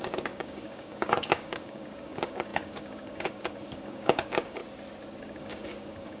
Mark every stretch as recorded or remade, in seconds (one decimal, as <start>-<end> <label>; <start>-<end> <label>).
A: 0.0-4.6 remade; 4.6-5.2 recorded; 5.2-6.2 remade